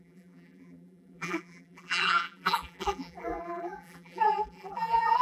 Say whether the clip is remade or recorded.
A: remade